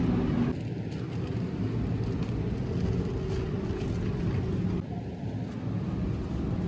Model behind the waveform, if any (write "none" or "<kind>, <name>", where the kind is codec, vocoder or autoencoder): none